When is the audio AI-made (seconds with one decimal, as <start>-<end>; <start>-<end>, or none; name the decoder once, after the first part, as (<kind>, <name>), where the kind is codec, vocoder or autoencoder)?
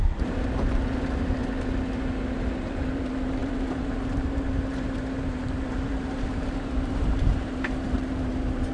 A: 0.0-1.4 (vocoder, BigVGAN v2); 2.8-8.7